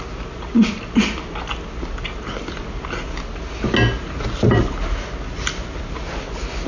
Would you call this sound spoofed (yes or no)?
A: no